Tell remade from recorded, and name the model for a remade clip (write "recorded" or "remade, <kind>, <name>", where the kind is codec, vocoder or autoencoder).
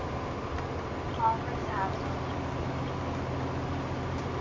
recorded